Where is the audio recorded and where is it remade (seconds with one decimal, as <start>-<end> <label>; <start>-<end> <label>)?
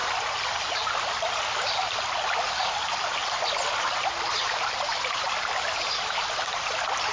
0.0-7.1 recorded